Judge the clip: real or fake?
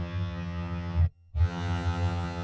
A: fake